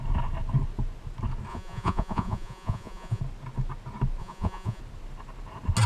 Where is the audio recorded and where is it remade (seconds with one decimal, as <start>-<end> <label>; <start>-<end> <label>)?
0.0-1.5 recorded; 1.5-3.2 remade; 3.2-4.2 recorded; 4.2-4.8 remade; 4.8-5.9 recorded